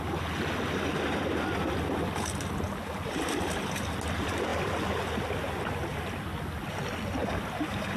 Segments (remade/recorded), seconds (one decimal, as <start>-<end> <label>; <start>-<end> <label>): 0.0-7.2 recorded; 7.2-8.0 remade